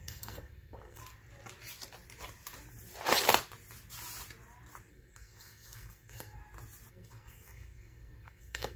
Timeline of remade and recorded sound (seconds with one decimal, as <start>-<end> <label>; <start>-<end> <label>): 0.0-1.0 remade; 1.0-4.9 recorded; 4.9-6.4 remade; 6.4-6.9 recorded; 6.9-8.8 remade